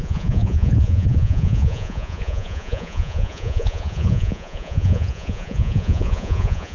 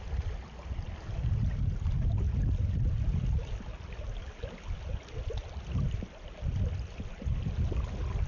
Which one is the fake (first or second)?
first